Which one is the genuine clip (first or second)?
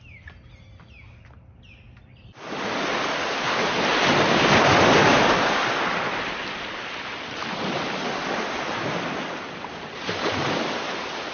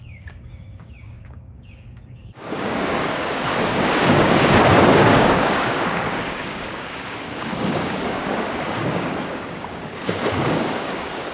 first